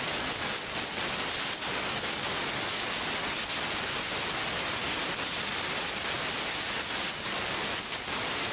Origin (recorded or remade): recorded